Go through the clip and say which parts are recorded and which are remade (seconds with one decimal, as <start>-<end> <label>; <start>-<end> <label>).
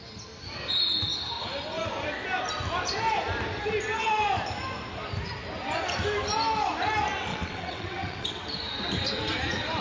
0.0-7.3 recorded; 7.3-8.4 remade; 8.4-9.8 recorded